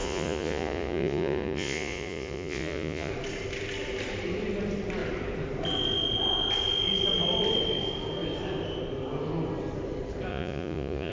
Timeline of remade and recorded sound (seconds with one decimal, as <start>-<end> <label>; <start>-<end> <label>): 0.0-3.1 remade; 3.1-10.3 recorded; 10.3-11.1 remade